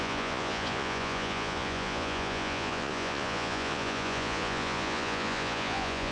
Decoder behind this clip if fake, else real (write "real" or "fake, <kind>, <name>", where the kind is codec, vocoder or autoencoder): fake, vocoder, Vocos